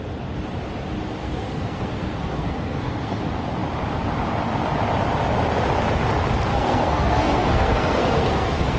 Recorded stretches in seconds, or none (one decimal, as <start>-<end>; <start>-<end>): 0.0-1.2; 3.2-6.5

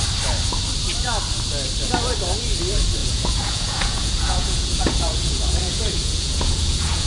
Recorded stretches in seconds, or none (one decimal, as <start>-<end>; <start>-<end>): 0.0-3.0

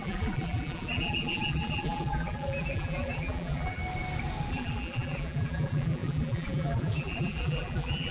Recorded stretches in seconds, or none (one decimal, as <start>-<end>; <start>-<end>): 3.8-4.5